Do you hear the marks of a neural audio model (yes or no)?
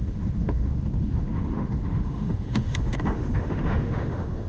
yes